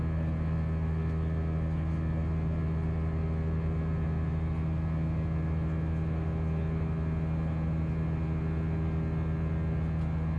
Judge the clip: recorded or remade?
recorded